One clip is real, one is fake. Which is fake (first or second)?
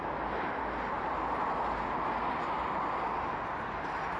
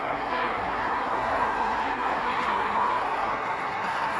second